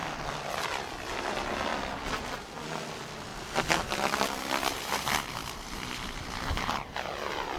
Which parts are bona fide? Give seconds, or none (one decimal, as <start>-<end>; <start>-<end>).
0.0-3.3; 4.8-5.4; 6.3-7.6